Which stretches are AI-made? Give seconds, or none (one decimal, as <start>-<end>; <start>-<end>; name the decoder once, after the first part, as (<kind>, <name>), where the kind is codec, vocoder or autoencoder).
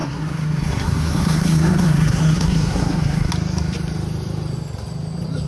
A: 0.0-3.3 (codec, SNAC)